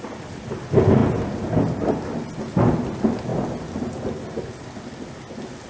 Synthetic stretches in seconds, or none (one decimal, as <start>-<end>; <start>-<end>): none